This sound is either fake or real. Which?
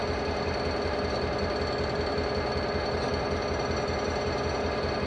real